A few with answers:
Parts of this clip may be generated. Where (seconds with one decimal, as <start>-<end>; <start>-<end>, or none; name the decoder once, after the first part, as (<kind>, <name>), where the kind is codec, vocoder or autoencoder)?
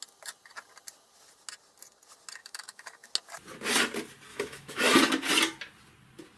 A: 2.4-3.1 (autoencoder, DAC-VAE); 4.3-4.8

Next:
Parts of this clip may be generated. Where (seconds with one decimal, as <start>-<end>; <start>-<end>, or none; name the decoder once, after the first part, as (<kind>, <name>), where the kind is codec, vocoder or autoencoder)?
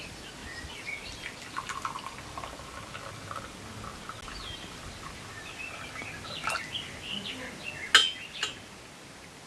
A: none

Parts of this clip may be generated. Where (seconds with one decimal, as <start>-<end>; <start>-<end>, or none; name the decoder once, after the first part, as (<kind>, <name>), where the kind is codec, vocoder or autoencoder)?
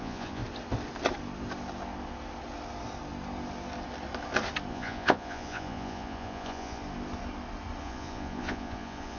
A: 0.0-0.4 (vocoder, Vocos); 4.7-6.8; 7.8-9.2